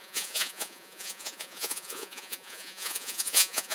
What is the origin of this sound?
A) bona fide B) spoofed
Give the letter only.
B